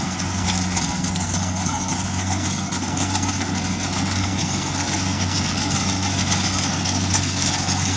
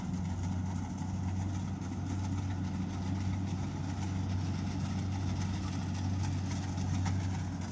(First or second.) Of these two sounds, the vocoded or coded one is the first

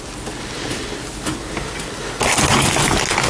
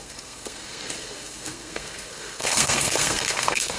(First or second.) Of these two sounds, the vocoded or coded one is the second